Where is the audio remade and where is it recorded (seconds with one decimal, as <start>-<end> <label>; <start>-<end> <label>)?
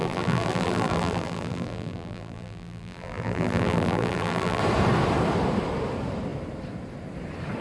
0.0-4.6 remade; 4.6-7.6 recorded